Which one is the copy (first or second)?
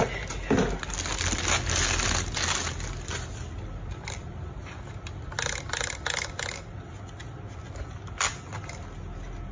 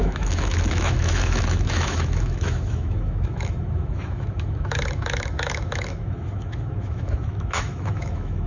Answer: second